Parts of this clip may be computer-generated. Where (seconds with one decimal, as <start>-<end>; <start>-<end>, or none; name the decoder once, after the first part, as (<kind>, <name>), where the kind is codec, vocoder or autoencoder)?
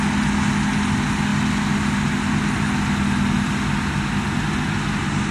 none